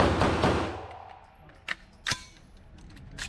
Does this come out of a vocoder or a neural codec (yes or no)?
no